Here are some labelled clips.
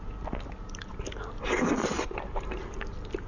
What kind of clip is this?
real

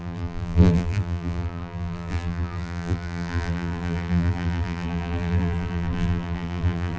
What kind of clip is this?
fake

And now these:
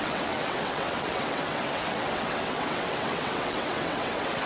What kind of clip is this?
fake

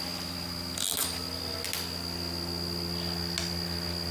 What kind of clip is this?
real